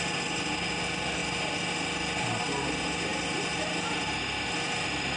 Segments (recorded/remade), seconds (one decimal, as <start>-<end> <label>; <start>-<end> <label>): 0.0-5.2 recorded